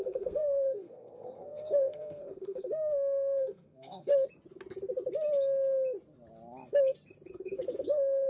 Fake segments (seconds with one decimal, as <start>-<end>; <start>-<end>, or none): 0.0-4.1; 7.3-8.3